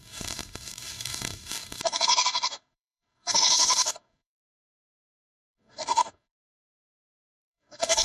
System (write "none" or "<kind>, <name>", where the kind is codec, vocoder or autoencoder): codec, DAC